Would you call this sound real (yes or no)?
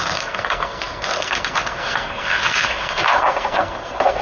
no